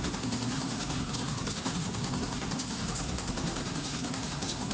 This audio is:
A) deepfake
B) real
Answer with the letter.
A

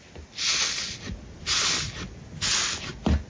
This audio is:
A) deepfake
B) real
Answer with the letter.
B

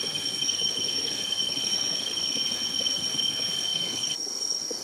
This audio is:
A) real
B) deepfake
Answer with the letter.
B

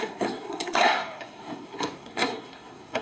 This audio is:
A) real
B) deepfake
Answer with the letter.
B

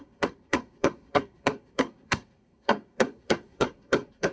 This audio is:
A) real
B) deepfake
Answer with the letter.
B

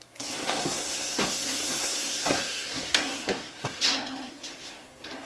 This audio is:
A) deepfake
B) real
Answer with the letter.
A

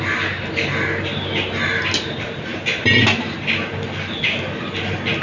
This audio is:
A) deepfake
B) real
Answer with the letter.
B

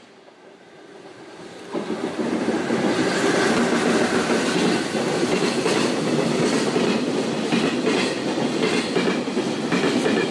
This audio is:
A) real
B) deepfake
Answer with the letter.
A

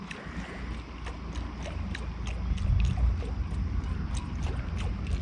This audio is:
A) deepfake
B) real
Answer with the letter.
B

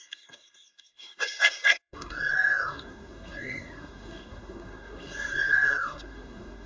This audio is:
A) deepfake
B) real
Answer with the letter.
A